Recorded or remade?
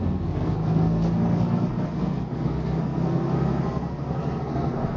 remade